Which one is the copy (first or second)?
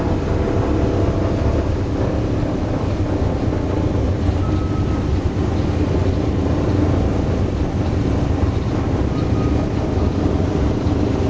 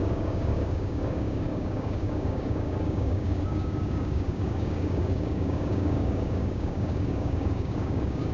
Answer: second